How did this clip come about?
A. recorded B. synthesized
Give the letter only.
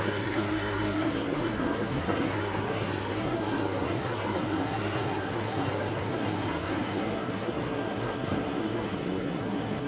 B